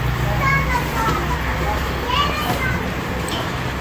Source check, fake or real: real